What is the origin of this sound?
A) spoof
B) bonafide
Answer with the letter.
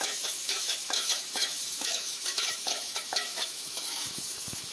A